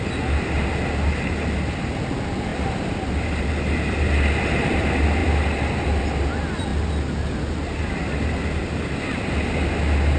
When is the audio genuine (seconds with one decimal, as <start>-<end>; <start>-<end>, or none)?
0.0-2.5; 3.4-10.2